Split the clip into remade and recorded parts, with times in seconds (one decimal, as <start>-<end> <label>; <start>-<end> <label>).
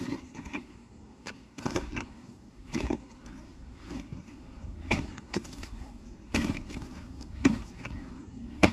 0.0-8.7 remade